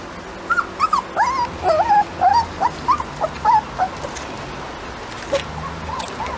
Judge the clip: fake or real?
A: real